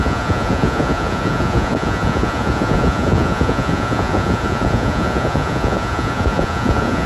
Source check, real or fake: fake